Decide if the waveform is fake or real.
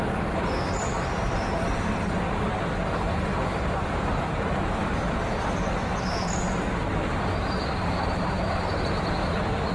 real